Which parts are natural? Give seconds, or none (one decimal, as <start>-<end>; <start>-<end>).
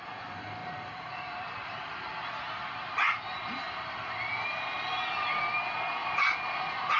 0.0-0.6; 4.8-6.0; 6.6-7.0